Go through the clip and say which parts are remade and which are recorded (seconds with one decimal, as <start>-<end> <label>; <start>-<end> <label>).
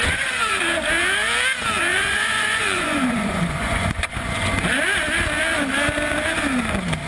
0.0-0.6 remade; 0.6-1.9 recorded; 1.9-4.5 remade; 4.5-7.1 recorded